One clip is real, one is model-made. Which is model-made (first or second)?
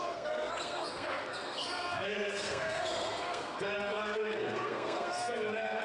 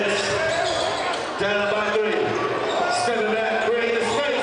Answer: first